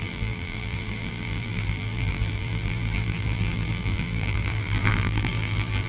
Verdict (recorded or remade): remade